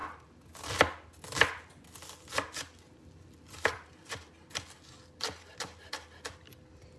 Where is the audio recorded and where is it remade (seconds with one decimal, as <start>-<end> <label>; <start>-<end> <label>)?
0.0-7.0 recorded